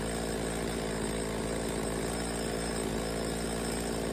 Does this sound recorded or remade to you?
recorded